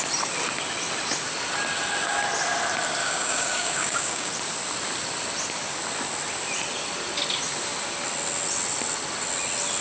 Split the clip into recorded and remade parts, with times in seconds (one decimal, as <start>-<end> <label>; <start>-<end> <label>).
0.0-3.0 recorded; 3.0-4.3 remade; 4.3-9.8 recorded